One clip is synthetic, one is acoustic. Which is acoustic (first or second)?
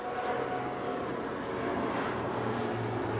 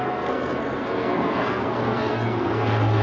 first